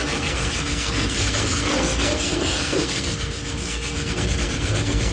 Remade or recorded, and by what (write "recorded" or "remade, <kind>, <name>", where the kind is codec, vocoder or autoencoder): remade, codec, SNAC